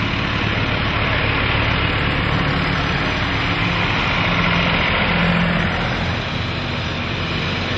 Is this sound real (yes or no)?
yes